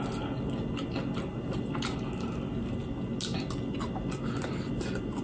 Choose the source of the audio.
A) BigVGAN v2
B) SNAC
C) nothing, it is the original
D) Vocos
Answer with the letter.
C